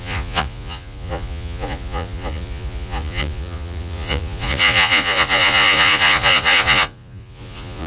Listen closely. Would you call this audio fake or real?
fake